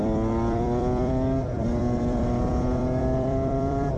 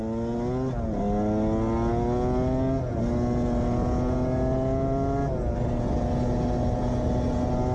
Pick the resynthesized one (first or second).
first